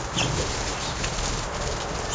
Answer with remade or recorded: recorded